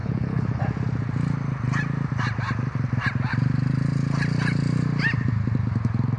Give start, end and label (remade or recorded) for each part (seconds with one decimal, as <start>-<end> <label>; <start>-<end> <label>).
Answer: 0.0-0.6 remade; 0.6-6.2 recorded